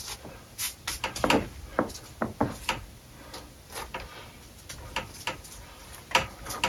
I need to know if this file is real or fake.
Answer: real